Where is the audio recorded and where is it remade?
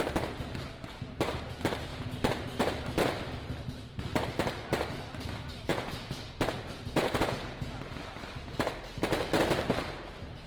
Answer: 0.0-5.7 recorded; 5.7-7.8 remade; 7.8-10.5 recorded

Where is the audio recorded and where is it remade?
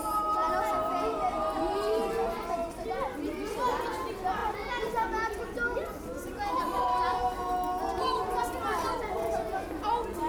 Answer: 0.0-10.3 recorded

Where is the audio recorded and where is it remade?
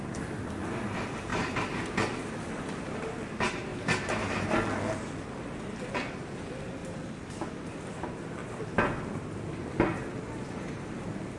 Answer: 0.0-1.3 recorded; 1.3-2.3 remade; 2.3-3.7 recorded; 3.7-4.5 remade; 4.5-6.8 recorded; 6.8-7.4 remade; 7.4-11.4 recorded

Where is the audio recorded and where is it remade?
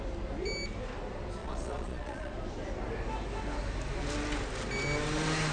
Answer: 0.0-1.4 recorded; 1.4-2.3 remade; 2.3-5.5 recorded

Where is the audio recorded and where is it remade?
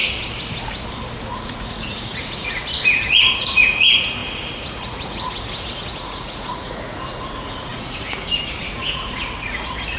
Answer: 0.0-1.2 recorded; 1.2-10.0 remade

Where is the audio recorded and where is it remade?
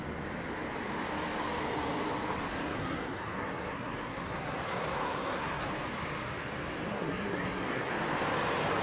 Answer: 0.0-2.5 recorded; 2.5-5.7 remade; 5.7-6.9 recorded; 6.9-7.9 remade; 7.9-8.8 recorded